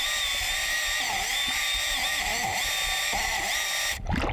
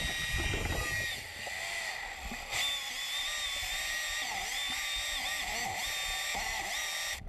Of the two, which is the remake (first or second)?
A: first